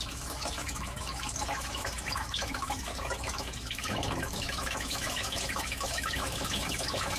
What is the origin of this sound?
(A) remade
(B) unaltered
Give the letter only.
A